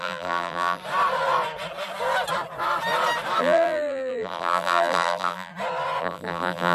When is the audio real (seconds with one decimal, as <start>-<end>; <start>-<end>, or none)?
0.8-3.4; 5.5-6.0